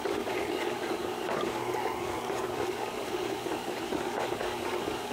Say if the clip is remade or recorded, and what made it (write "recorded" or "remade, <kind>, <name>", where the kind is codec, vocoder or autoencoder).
remade, codec, DAC